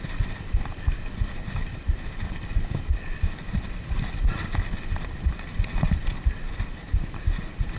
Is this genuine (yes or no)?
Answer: yes